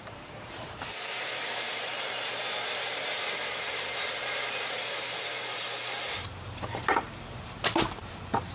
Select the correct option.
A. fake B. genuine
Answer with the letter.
A